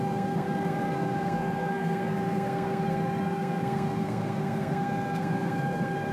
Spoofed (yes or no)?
yes